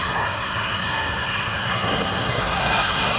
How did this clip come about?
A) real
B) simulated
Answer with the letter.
B